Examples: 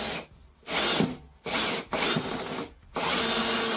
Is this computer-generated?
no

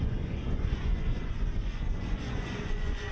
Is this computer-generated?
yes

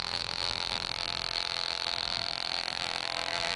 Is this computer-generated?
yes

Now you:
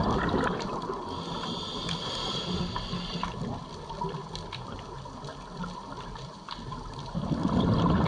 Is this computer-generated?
no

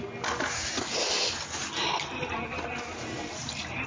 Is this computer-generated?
no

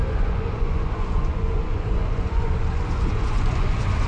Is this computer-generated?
yes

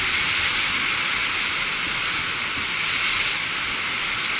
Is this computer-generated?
no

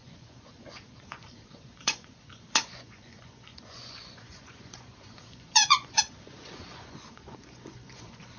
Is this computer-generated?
yes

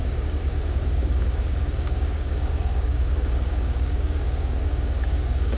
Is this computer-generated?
yes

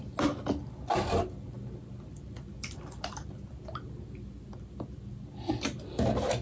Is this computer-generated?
no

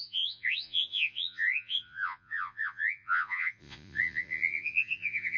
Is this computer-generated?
yes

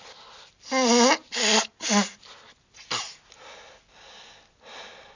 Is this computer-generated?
no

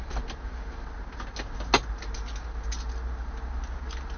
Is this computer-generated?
no